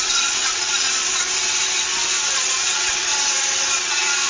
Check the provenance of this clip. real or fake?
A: fake